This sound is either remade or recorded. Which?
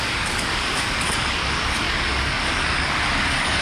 remade